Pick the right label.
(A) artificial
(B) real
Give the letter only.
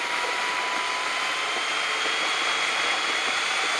B